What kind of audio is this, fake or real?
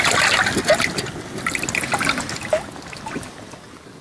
real